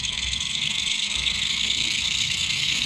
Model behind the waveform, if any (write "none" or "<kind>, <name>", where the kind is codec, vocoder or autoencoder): codec, SNAC